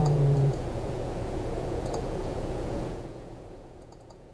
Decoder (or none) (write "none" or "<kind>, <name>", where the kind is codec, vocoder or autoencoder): vocoder, Vocos